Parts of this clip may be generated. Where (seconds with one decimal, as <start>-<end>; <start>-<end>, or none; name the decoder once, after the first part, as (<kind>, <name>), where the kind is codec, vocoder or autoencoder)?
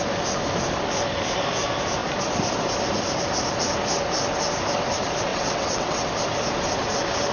5.3-6.1 (vocoder, WaveNeXt)